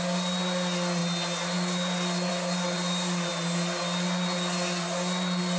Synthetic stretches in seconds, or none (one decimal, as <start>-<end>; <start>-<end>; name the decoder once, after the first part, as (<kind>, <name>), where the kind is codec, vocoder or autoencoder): none